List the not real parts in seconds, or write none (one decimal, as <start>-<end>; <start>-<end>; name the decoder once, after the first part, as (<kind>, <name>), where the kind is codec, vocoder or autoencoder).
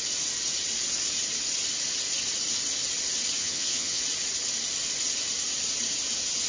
3.4-4.0 (vocoder, HiFi-GAN)